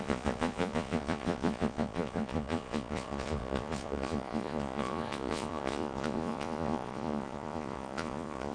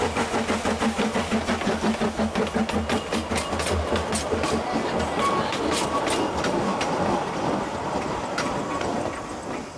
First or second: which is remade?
first